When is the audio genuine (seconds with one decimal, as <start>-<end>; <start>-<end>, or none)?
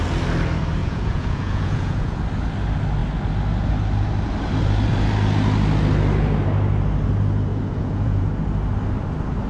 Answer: 0.0-0.8; 2.2-7.5; 8.3-9.5